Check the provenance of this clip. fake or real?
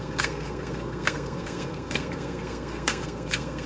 fake